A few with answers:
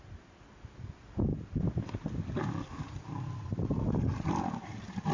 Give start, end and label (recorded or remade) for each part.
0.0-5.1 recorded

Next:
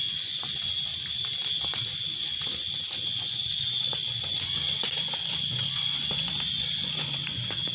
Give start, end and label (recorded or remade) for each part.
0.0-0.9 remade; 0.9-1.9 recorded; 1.9-7.7 remade

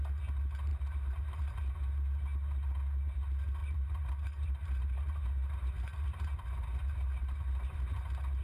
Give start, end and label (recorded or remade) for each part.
0.0-0.7 recorded; 0.7-1.5 remade; 1.5-3.6 recorded; 3.6-8.0 remade; 8.0-8.4 recorded

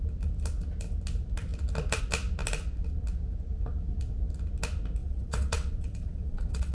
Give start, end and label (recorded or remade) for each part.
0.0-5.0 recorded; 5.0-6.7 remade

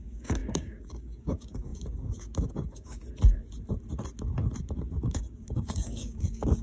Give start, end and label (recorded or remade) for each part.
0.0-3.0 remade; 3.0-5.0 recorded; 5.0-6.6 remade